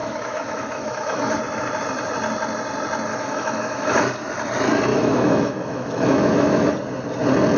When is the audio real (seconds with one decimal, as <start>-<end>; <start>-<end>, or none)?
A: 1.3-3.1; 4.0-4.9; 6.7-7.6